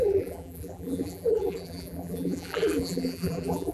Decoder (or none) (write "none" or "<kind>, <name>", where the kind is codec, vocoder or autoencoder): vocoder, BigVGAN v2